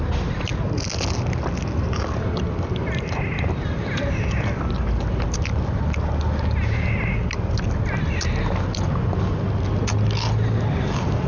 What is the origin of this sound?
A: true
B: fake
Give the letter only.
A